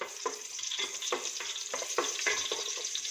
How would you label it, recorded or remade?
remade